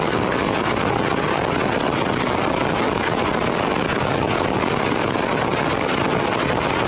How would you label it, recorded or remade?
recorded